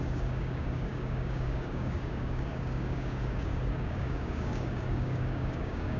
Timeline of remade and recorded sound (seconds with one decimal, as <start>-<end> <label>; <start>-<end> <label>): 0.0-6.0 remade